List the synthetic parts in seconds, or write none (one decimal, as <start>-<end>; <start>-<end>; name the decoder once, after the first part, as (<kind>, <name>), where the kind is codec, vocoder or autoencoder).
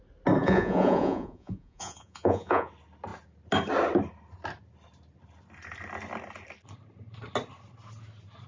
0.4-2.7 (vocoder, Vocos)